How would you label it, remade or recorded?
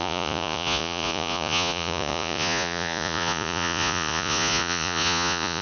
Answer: remade